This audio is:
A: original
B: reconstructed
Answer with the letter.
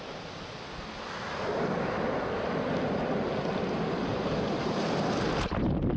A